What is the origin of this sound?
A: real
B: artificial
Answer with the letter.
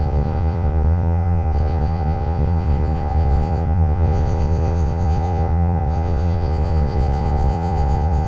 B